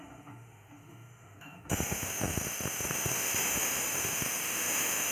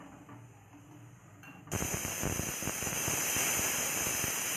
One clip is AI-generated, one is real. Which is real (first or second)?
second